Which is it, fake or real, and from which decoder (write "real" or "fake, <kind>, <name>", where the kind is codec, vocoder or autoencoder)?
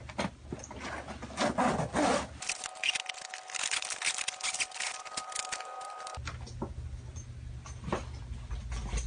real